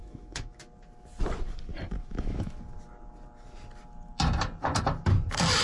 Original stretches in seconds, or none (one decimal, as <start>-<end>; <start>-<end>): 0.6-2.0; 2.6-5.6